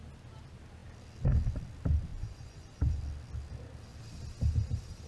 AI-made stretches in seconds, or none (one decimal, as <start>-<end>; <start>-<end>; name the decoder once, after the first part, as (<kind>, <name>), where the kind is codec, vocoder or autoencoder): 2.1-3.0 (vocoder, Vocos)